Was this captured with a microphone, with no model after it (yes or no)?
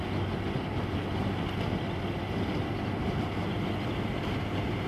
yes